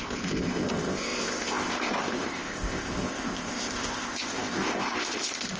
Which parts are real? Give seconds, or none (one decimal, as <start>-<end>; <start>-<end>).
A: none